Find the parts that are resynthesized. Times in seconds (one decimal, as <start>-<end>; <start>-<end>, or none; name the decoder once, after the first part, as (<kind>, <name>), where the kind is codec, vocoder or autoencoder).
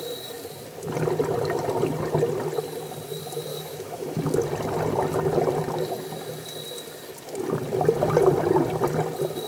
3.5-4.2 (autoencoder, DAC-VAE)